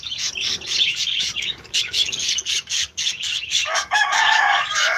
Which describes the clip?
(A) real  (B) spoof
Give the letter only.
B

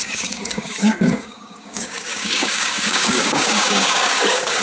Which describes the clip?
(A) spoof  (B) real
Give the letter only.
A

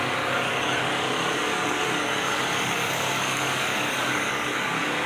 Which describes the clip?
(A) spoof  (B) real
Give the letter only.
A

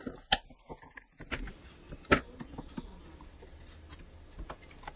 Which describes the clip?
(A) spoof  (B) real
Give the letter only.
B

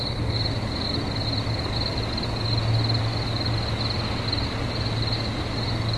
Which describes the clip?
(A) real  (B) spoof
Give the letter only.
A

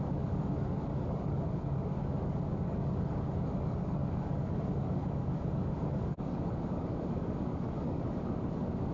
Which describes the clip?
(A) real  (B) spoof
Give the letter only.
B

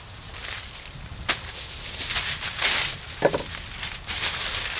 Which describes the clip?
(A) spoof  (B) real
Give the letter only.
B